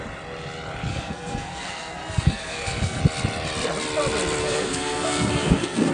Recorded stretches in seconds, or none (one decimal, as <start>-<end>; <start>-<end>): 0.0-0.9; 3.0-4.4